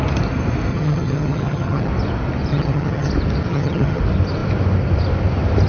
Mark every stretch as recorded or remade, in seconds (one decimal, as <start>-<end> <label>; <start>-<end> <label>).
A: 0.0-0.7 recorded; 0.7-1.9 remade; 1.9-2.5 recorded; 2.5-3.1 remade; 3.1-3.5 recorded; 3.5-4.0 remade; 4.0-5.7 recorded